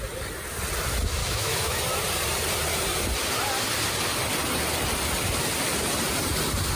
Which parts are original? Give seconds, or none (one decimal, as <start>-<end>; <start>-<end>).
0.0-1.2; 1.8-6.8